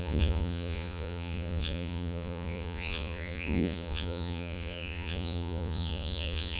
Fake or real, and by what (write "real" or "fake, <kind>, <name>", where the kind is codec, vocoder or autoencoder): fake, vocoder, Vocos